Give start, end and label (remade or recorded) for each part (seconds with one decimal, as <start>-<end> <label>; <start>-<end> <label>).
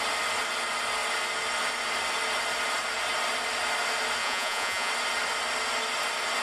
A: 0.0-4.2 recorded; 4.2-4.9 remade; 4.9-6.4 recorded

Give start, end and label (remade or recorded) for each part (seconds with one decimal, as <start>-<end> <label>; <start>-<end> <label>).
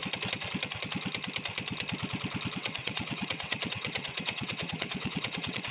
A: 0.0-2.6 recorded; 2.6-5.7 remade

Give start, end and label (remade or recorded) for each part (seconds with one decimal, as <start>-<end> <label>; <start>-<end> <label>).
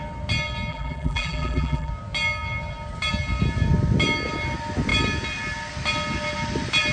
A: 0.0-0.7 recorded; 0.7-1.9 remade; 1.9-6.9 recorded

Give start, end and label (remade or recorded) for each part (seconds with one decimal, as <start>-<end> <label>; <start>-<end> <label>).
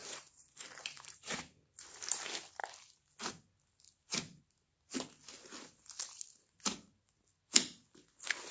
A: 0.0-1.4 remade; 1.4-8.5 recorded